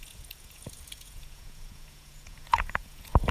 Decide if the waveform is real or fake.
fake